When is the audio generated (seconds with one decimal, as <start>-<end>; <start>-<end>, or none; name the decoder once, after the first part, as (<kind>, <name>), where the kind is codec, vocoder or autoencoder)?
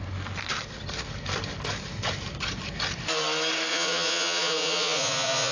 3.7-5.5 (vocoder, Vocos)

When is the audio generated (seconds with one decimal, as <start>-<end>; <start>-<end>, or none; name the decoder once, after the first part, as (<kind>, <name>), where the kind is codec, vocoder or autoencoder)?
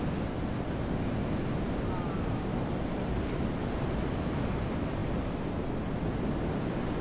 none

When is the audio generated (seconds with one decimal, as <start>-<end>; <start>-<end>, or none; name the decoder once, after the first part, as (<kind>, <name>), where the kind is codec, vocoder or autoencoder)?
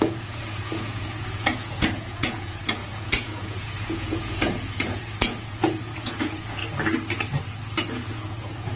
0.0-6.6 (vocoder, Vocos); 7.9-8.8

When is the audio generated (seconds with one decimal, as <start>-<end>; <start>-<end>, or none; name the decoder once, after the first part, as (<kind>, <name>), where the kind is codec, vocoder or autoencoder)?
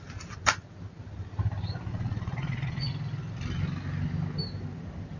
1.9-2.9 (vocoder, Vocos)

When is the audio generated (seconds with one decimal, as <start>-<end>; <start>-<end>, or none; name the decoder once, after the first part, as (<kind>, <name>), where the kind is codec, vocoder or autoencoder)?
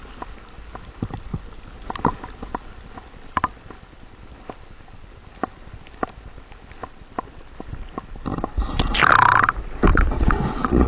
9.9-10.9 (vocoder, Vocos)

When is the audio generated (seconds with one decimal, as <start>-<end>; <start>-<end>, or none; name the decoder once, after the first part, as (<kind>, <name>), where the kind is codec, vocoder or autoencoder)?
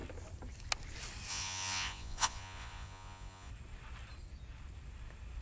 1.3-3.5 (vocoder, Vocos)